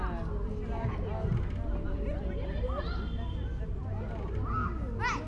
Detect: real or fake real